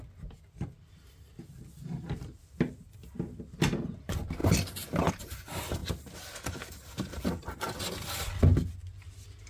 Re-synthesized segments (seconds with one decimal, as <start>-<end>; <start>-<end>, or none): none